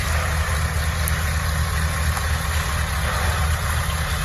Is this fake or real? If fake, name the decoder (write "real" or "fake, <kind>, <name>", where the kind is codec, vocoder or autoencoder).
real